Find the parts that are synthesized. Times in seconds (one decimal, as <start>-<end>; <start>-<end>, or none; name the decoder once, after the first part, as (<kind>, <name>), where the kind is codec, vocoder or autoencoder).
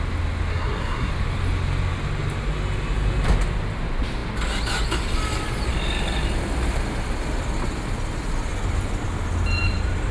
0.5-1.1 (codec, SNAC)